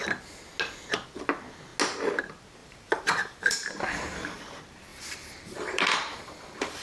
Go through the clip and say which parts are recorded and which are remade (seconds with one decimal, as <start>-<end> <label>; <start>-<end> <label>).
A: 0.0-2.6 recorded; 2.6-4.4 remade; 4.4-4.9 recorded; 4.9-6.8 remade